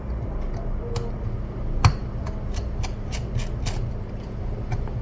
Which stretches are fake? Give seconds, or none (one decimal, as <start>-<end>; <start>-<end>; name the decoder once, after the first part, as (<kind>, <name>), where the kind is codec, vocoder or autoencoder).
none